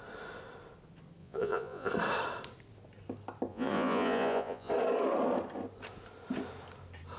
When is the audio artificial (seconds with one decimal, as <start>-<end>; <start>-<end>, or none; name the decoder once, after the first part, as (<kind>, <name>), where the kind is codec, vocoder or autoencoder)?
1.2-1.9 (vocoder, Vocos); 3.5-4.7